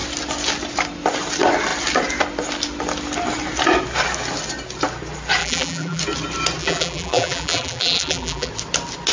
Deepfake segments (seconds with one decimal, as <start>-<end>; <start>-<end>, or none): 5.4-6.0; 6.6-8.5